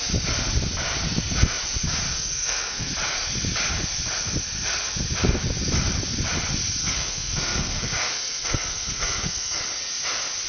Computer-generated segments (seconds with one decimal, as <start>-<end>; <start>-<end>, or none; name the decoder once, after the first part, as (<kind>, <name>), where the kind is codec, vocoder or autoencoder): 2.1-2.9 (codec, SNAC); 6.8-9.6